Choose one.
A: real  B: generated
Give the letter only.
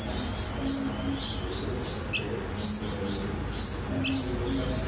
A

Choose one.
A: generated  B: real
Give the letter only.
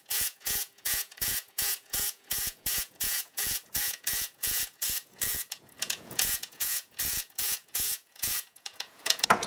A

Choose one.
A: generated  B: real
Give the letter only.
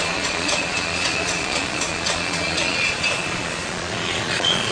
A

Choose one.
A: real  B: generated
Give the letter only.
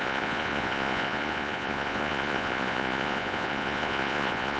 B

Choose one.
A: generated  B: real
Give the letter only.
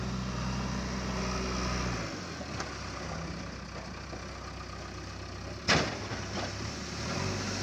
B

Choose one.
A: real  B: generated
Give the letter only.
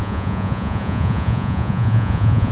B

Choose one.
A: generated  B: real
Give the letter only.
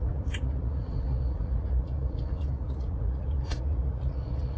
A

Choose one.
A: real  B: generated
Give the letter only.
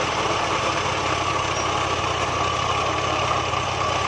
A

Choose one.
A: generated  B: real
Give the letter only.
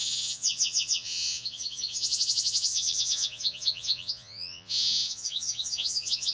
A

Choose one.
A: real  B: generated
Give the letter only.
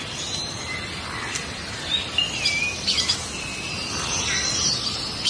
A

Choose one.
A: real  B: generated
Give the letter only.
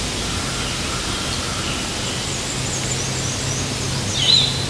A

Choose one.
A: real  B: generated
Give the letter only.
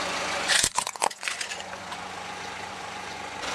B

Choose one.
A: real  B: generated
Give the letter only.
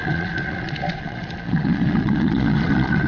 B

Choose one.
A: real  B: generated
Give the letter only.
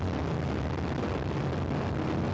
A